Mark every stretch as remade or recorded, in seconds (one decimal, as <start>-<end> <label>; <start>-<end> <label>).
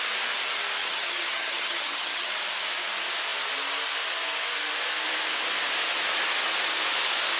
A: 0.0-0.8 recorded; 0.8-2.3 remade; 2.3-7.4 recorded